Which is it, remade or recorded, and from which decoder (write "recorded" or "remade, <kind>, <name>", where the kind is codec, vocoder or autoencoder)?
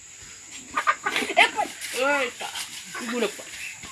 recorded